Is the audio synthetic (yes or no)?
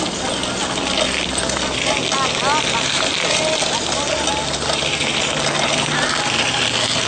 no